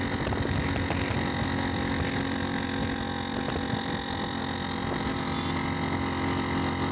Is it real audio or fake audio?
real